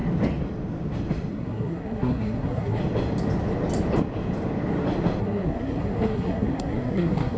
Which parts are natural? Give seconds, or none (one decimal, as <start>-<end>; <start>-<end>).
0.0-1.3; 2.8-5.2